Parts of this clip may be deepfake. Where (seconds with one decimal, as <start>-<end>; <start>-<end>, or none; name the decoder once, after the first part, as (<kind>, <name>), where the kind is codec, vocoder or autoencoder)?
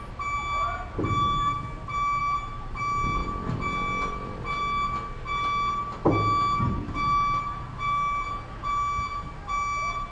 none